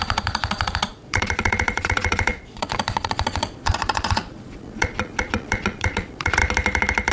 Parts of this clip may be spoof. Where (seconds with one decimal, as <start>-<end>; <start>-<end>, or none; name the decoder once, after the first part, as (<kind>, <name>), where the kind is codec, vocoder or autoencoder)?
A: 0.0-6.4 (vocoder, Vocos)